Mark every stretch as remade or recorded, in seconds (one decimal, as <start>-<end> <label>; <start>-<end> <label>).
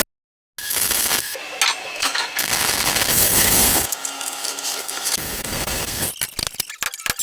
0.0-0.6 recorded; 0.6-1.4 remade; 1.4-1.8 recorded; 1.8-6.1 remade; 6.1-7.2 recorded